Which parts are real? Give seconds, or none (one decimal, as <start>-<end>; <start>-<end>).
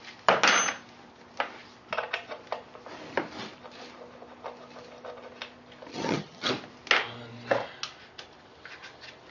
0.0-5.9; 6.5-9.3